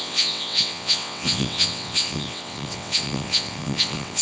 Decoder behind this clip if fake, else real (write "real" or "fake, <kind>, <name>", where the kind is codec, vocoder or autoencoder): fake, vocoder, WaveNeXt